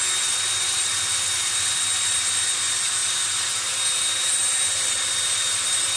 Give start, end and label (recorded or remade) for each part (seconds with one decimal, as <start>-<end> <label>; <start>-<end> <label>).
0.0-6.0 recorded